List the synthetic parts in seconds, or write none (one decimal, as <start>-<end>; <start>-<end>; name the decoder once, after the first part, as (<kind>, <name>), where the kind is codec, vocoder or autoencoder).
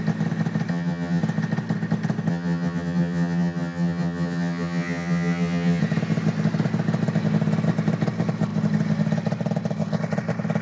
0.7-1.2 (vocoder, HiFi-GAN); 2.3-5.8